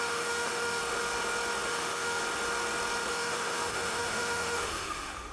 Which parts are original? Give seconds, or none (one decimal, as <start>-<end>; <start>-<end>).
0.8-1.7; 2.2-3.1